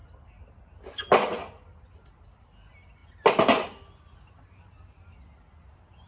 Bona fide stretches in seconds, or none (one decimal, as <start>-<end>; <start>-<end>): 0.0-6.1